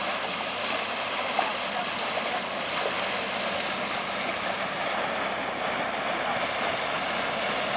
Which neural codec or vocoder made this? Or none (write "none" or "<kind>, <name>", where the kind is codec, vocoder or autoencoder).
none